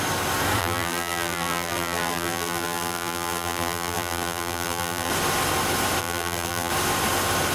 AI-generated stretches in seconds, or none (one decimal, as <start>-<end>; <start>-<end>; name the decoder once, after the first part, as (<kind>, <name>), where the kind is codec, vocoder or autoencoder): 0.6-5.1 (vocoder, BigVGAN v2); 6.0-6.7